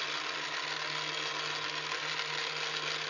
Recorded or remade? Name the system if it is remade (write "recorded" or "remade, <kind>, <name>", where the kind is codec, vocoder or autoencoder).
recorded